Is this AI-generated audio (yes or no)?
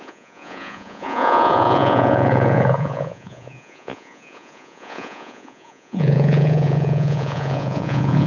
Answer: yes